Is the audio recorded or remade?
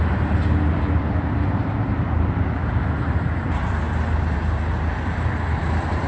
remade